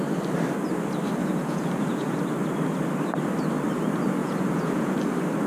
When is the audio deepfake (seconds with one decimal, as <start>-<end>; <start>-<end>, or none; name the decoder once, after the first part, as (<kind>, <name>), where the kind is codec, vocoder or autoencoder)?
1.2-2.2 (vocoder, Vocos); 4.2-5.0